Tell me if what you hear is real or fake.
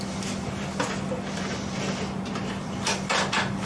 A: real